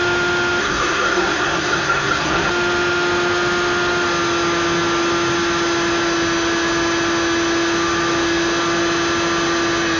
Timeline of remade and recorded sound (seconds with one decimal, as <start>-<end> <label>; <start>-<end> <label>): 0.0-0.6 recorded; 0.6-2.5 remade; 2.5-10.0 recorded